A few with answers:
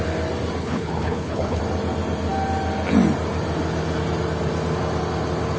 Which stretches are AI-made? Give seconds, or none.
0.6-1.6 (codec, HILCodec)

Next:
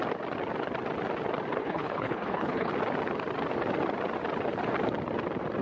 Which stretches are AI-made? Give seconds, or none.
1.6-2.7 (codec, HILCodec)

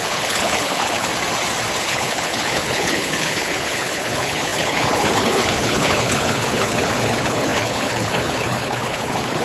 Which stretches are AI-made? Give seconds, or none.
0.0-1.1 (codec, HILCodec); 1.8-9.4